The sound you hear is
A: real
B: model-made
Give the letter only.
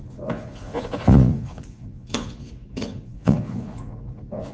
B